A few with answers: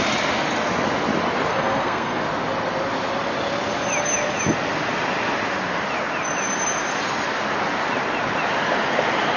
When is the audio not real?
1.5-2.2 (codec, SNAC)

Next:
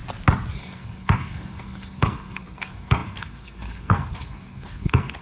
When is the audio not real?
0.6-5.2 (codec, SNAC)

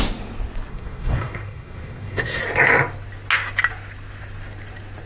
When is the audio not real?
0.7-2.4 (codec, SNAC)

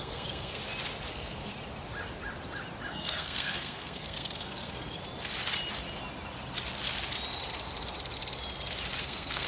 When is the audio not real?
0.0-0.6 (codec, SNAC); 1.1-1.5; 2.9-5.0; 9.0-9.5